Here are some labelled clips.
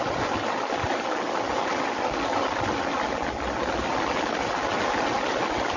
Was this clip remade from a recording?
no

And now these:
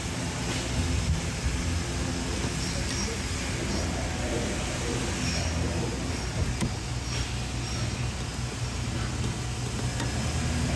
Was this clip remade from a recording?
no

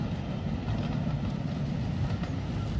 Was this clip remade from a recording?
no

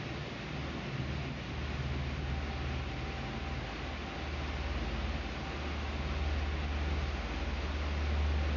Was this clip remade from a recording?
no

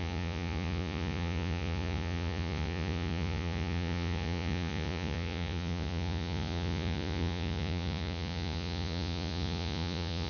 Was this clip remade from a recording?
yes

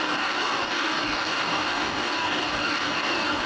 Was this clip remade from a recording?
yes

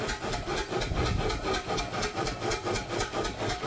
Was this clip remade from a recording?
no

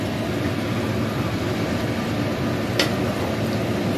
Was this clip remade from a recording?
no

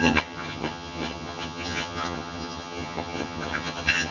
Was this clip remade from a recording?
yes